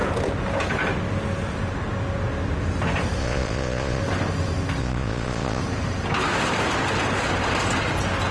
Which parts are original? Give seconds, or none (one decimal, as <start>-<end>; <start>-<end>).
0.0-3.2; 4.0-4.8; 5.6-8.3